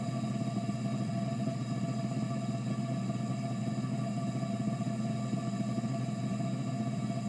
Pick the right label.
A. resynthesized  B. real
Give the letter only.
B